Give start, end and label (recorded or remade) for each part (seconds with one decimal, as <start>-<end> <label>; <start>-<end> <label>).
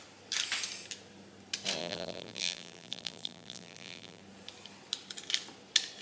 0.0-1.8 recorded; 1.8-4.2 remade; 4.2-6.0 recorded